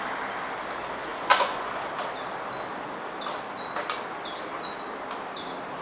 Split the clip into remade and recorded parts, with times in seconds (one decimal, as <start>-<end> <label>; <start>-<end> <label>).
0.0-1.1 recorded; 1.1-1.7 remade; 1.7-5.8 recorded